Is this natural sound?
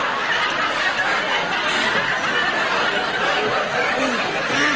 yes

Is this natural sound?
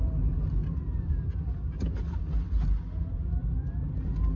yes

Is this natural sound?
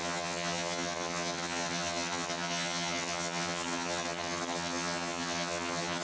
no